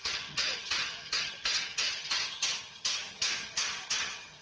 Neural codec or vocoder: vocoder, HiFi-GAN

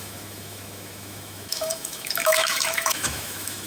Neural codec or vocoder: autoencoder, DAC-VAE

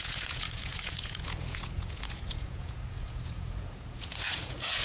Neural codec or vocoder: vocoder, Vocos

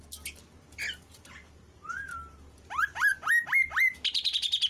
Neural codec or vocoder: none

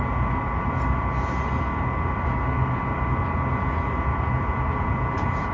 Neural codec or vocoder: none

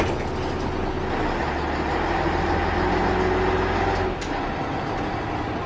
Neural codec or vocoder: none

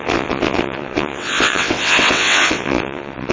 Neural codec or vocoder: vocoder, WaveNeXt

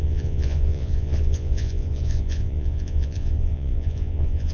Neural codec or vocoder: vocoder, Vocos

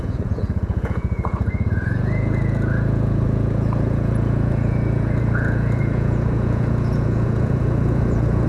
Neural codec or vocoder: vocoder, Vocos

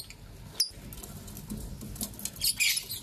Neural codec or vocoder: none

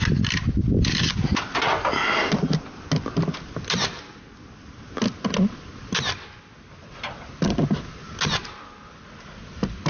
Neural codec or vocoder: none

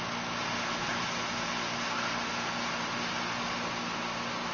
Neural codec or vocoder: none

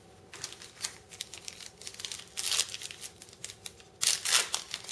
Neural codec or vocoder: none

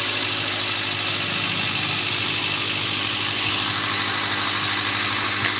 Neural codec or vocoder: none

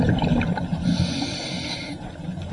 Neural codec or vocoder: none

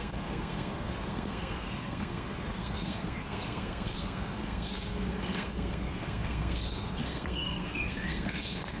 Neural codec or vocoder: codec, SNAC